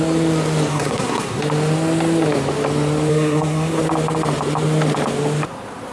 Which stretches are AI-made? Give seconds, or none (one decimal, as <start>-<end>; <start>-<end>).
0.7-1.4; 3.1-3.8